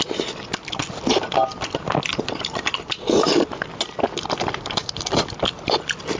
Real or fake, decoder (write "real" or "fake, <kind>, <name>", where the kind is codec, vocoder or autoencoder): real